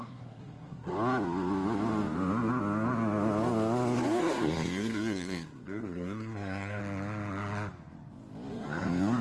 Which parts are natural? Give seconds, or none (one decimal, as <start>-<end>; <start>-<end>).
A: 0.9-4.2; 6.8-8.5